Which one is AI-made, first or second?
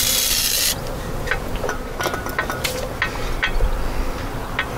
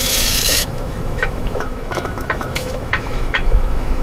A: second